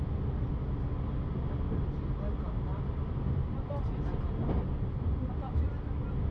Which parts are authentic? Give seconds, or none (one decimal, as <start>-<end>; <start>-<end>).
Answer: 0.0-2.7; 5.7-6.3

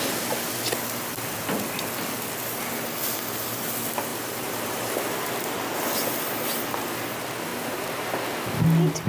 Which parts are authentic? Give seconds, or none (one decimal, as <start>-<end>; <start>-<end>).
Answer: 0.0-4.1; 4.9-7.5; 8.1-9.1

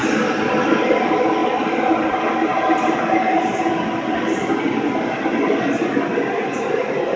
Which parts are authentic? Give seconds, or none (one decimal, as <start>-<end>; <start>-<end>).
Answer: 0.0-1.4; 2.1-7.2

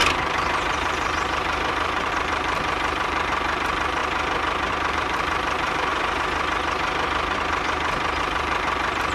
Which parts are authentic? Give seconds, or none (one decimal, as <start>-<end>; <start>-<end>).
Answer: 4.0-4.9; 5.9-8.2

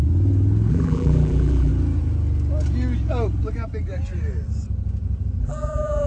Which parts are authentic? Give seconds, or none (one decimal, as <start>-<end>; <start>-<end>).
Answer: 0.0-0.7; 1.7-5.4

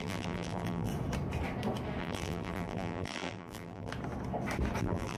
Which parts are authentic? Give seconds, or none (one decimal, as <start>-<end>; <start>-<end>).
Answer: 0.9-2.0; 3.9-4.8